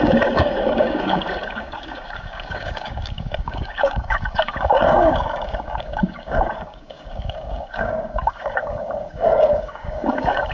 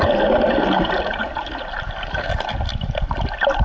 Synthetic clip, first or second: first